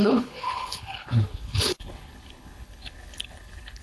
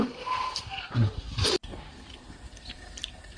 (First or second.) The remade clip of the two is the first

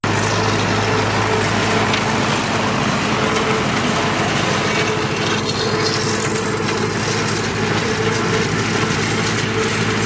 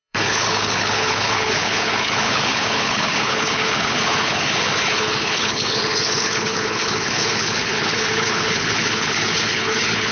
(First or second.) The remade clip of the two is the second